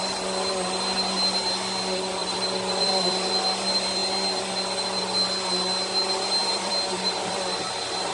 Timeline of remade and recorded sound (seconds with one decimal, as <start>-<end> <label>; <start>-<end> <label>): 0.0-2.2 recorded; 2.2-3.3 remade; 3.3-6.4 recorded; 6.4-8.1 remade